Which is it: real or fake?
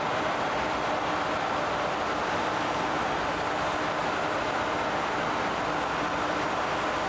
real